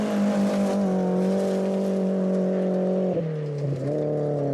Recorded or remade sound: recorded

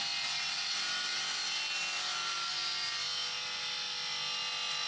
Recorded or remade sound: recorded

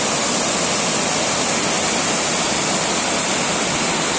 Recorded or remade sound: recorded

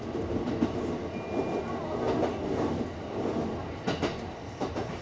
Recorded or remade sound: recorded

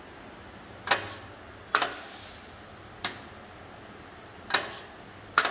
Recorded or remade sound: recorded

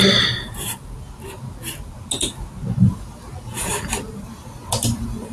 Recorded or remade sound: remade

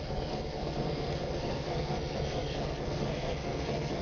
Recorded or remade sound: remade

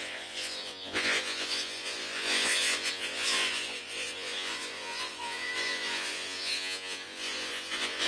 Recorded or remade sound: remade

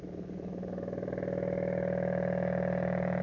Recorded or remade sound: recorded